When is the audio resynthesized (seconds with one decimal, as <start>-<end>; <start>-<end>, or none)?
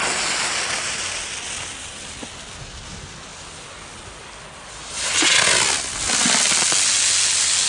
none